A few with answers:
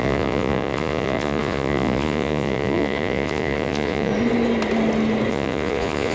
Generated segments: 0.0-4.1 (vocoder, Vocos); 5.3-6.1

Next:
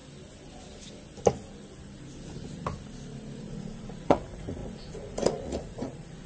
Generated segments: 3.4-6.3 (vocoder, Vocos)

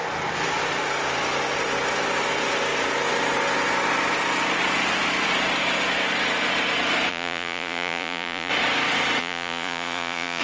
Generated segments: 7.1-8.5 (vocoder, Vocos); 9.2-10.4

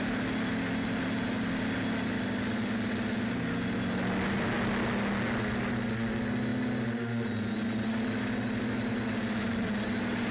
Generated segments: none

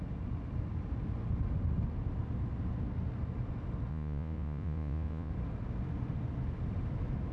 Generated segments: 3.9-5.3 (vocoder, Vocos)